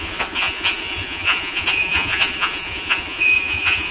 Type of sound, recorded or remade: remade